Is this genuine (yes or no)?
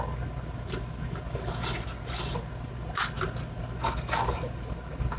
yes